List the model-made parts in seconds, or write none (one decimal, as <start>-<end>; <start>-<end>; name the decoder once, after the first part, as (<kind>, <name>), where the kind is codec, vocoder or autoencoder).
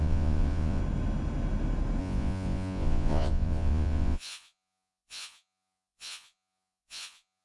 0.0-0.8 (vocoder, Vocos); 2.0-7.4